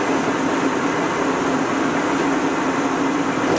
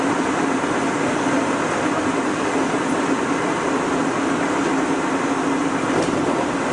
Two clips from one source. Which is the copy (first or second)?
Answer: second